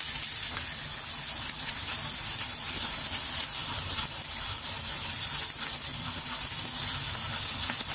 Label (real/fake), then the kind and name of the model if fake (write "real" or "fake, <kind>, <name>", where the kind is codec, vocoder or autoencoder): real